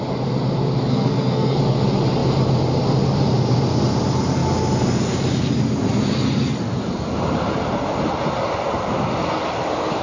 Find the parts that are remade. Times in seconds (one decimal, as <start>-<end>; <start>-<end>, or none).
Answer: 0.9-1.6